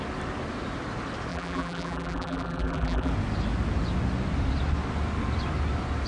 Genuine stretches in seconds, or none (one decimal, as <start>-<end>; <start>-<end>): 0.0-1.3; 3.1-6.1